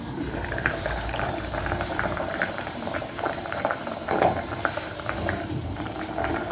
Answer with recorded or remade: remade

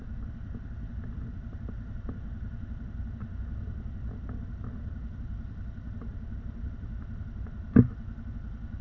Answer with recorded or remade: recorded